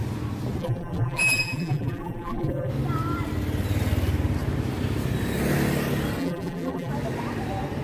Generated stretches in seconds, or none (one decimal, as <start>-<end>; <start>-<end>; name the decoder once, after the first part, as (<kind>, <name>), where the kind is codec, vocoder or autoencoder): 0.6-2.7 (vocoder, BigVGAN v2); 6.2-6.9